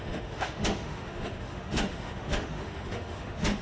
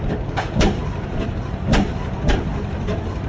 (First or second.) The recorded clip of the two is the second